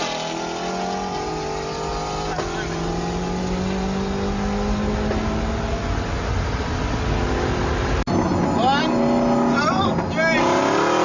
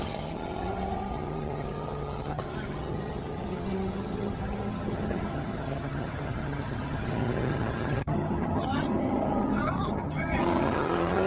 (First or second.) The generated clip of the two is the second